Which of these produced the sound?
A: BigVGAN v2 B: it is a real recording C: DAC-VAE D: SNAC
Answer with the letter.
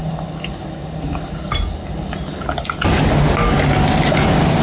B